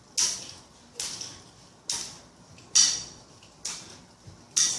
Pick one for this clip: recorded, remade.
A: recorded